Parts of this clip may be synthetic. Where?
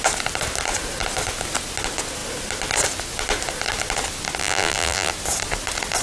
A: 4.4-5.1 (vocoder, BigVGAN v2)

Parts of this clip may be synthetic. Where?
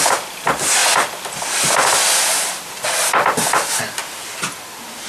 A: 0.0-0.8 (vocoder, BigVGAN v2); 2.3-4.0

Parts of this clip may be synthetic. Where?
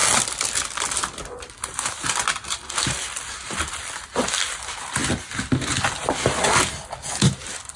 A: none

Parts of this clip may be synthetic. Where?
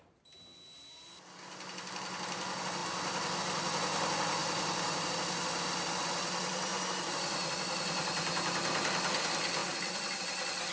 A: 4.4-5.1 (vocoder, BigVGAN v2); 6.7-7.5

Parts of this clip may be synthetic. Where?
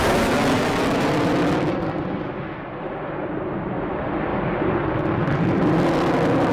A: none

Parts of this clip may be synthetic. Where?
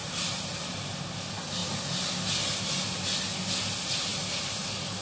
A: 0.0-0.6 (vocoder, BigVGAN v2)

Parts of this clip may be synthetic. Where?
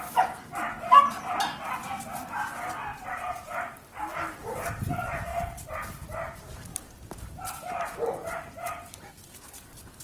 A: 5.3-9.4 (vocoder, BigVGAN v2)